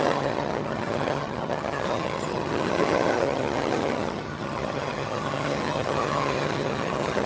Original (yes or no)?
no